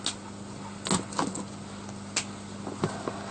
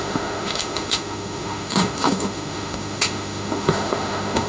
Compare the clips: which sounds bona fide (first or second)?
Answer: first